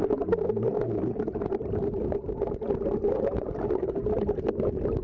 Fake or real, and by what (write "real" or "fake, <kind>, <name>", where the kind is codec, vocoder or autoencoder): real